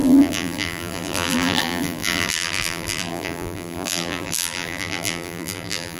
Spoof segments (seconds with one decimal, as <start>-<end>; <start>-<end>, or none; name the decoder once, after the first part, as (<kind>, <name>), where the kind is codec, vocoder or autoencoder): 0.0-6.0 (vocoder, BigVGAN v2)